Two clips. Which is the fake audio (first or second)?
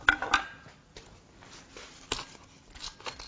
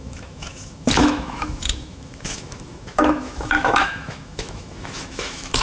second